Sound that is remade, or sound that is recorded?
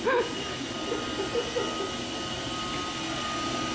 recorded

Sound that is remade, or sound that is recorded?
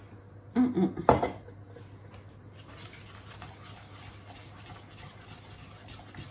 recorded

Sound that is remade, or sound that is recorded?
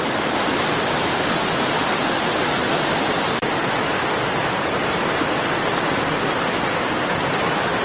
recorded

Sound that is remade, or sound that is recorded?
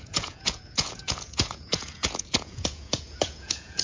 remade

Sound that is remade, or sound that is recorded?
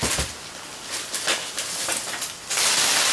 recorded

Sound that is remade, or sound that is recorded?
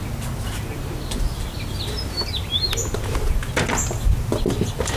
recorded